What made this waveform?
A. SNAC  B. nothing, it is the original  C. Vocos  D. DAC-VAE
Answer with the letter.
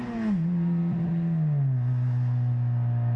B